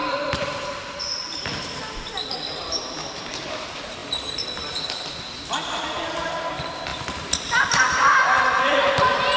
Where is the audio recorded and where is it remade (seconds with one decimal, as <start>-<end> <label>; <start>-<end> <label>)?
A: 0.0-3.2 remade; 3.2-4.0 recorded; 4.0-6.0 remade; 6.0-6.9 recorded; 6.9-9.0 remade; 9.0-9.4 recorded